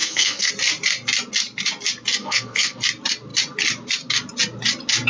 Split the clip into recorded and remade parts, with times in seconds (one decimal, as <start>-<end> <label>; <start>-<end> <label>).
0.0-0.5 remade; 0.5-2.2 recorded; 2.2-2.8 remade; 2.8-5.1 recorded